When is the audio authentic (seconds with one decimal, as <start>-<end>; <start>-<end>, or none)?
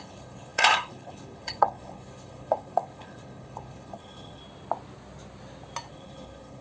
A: 4.4-5.9